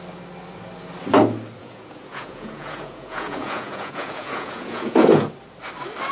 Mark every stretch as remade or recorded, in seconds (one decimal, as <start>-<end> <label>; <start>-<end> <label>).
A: 0.0-1.6 recorded; 1.6-5.3 remade; 5.3-6.1 recorded